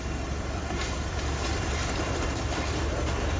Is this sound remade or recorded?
remade